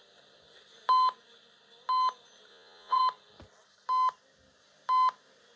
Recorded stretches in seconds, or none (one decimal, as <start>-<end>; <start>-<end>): 0.0-2.5; 3.0-5.6